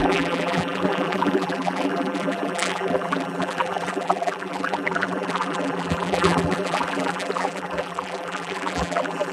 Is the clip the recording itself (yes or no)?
no